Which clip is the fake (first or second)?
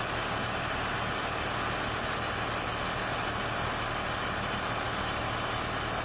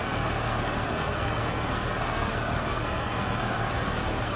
second